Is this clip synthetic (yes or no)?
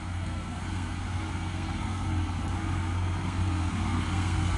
yes